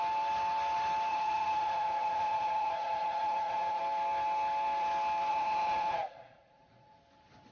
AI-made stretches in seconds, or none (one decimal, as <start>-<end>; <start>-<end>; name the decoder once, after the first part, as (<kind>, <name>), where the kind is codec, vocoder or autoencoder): 1.1-3.8 (vocoder, Vocos); 5.3-7.0